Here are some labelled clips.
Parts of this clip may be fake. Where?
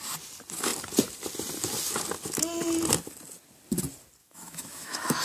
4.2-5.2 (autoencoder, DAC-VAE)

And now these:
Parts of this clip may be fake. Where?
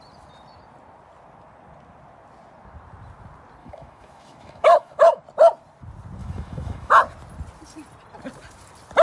3.6-5.2 (autoencoder, DAC-VAE); 6.2-6.9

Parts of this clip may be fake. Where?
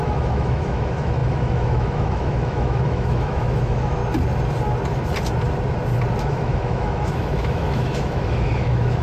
0.0-4.0 (autoencoder, DAC-VAE); 6.2-9.0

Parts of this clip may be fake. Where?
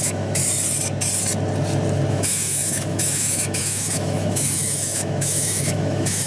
0.0-0.4 (autoencoder, DAC-VAE); 2.1-6.3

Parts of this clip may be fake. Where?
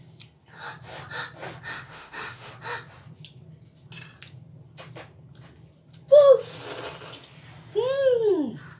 1.7-2.5 (autoencoder, DAC-VAE)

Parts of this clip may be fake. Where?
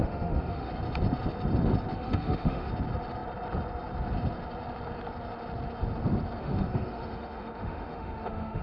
0.0-0.7 (autoencoder, DAC-VAE); 1.9-2.7; 6.4-8.6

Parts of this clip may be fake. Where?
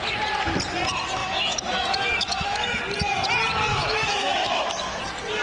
1.2-2.8 (autoencoder, DAC-VAE); 3.7-5.0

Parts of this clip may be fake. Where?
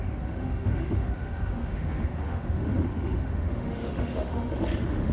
0.0-5.1 (autoencoder, DAC-VAE)